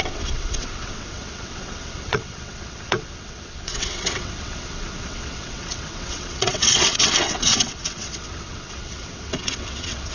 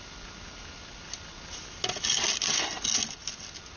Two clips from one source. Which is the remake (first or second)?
first